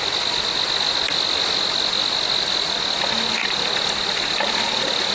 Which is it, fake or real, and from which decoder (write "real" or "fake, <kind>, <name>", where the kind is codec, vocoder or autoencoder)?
real